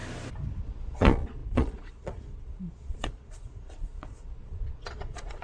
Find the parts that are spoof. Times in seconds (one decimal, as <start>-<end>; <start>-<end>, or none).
0.6-5.4